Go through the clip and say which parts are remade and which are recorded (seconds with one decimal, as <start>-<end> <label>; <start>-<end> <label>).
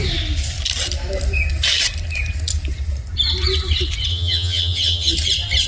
0.0-4.1 recorded; 4.1-5.1 remade; 5.1-5.7 recorded